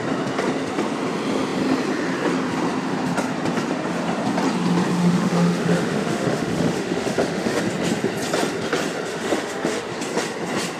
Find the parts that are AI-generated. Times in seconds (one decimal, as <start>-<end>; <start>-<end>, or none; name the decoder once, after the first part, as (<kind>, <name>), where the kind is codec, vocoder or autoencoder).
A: 5.0-7.6 (autoencoder, DAC-VAE); 9.1-10.0